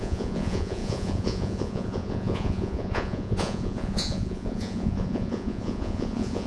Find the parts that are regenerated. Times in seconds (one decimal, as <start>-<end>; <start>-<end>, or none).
0.0-6.5